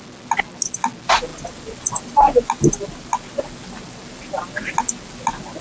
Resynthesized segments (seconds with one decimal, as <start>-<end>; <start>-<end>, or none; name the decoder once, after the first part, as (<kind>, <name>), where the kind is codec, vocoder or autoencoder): none